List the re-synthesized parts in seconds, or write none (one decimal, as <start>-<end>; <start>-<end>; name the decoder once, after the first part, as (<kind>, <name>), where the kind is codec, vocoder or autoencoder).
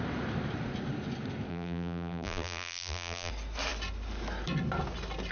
1.5-3.3 (vocoder, BigVGAN v2)